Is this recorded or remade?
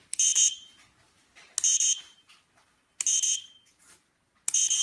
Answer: recorded